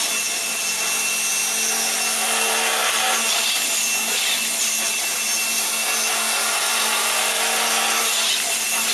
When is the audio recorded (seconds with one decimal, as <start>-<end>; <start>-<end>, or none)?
0.0-8.9